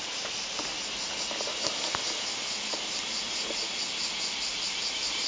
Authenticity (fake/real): real